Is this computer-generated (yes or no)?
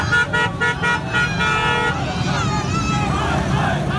no